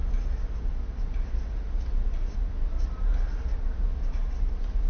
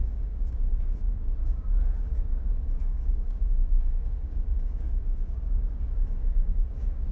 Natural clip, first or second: first